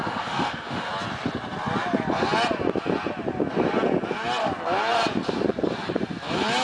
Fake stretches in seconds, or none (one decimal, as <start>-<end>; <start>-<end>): 0.0-0.9